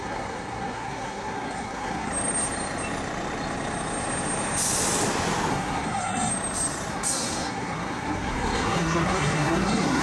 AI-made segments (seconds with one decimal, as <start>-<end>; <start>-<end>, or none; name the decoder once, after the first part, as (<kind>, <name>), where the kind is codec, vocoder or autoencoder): 0.0-2.1 (codec, SNAC); 5.5-6.3; 6.9-10.0